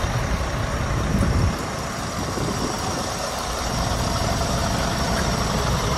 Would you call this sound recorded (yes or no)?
yes